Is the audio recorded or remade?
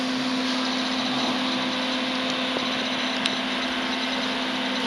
recorded